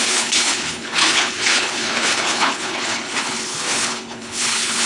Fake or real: fake